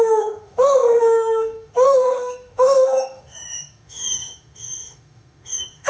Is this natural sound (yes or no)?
no